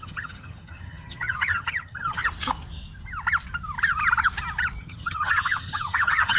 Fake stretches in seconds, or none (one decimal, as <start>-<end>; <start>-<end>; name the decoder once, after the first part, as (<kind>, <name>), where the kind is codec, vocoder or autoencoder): 0.0-2.2 (vocoder, HiFi-GAN); 4.8-6.4